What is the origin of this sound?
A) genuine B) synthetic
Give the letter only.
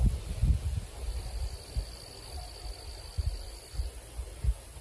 A